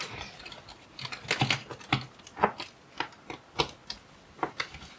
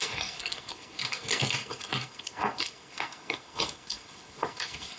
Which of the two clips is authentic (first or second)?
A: first